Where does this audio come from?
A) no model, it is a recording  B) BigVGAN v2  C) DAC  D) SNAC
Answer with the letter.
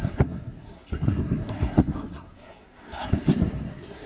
D